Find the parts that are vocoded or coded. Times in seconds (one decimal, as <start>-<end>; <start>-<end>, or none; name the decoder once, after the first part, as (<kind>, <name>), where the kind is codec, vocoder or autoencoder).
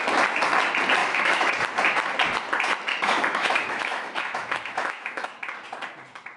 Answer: 1.0-1.5 (autoencoder, DAC-VAE); 2.9-5.3